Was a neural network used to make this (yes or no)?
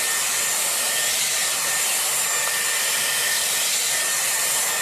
no